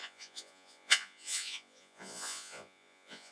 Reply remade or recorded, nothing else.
remade